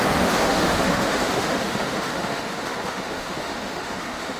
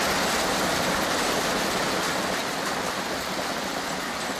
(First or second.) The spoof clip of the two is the first